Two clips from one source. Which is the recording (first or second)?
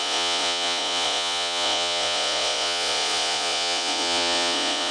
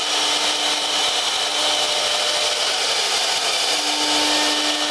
second